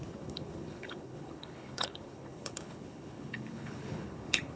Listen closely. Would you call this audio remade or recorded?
remade